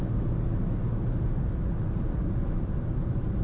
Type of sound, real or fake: real